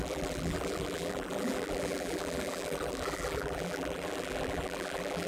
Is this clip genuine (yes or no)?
no